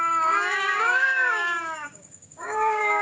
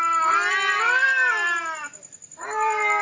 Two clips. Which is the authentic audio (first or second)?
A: second